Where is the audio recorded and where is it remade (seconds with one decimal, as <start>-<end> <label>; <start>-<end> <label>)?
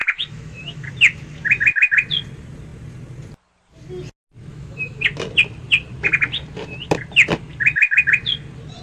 0.0-0.9 remade; 0.9-4.5 recorded; 4.5-5.0 remade; 5.0-8.8 recorded